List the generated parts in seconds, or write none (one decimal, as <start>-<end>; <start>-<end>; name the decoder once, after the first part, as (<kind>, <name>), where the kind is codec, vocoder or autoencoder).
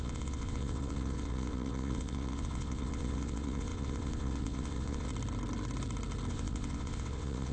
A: 0.0-5.1 (vocoder, WaveNeXt); 6.3-7.5